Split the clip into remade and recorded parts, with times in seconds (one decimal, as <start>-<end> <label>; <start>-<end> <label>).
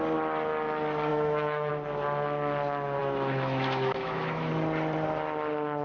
0.0-1.1 recorded; 1.1-1.7 remade; 1.7-3.0 recorded; 3.0-4.5 remade; 4.5-5.8 recorded